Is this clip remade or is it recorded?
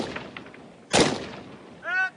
recorded